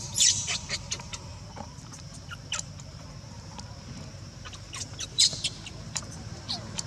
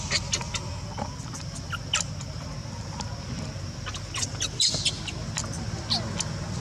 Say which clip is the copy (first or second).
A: first